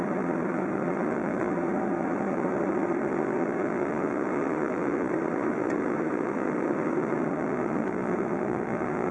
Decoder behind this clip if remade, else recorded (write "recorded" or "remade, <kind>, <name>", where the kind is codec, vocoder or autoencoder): remade, vocoder, Vocos